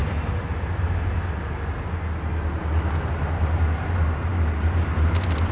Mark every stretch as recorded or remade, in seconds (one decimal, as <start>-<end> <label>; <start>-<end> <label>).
0.0-5.5 recorded